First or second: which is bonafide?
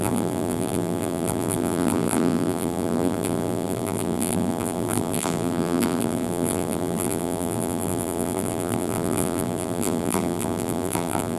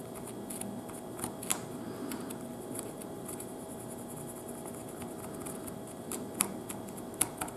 second